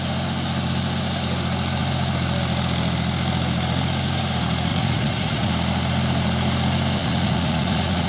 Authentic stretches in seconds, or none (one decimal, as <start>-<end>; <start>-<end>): 0.0-4.7; 5.5-7.0